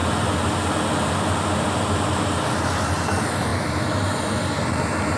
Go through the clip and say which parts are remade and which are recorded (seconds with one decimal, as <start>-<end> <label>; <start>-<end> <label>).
0.0-5.2 recorded